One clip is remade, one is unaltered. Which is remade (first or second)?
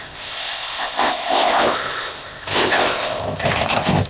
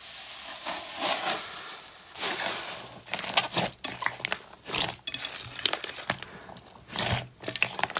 first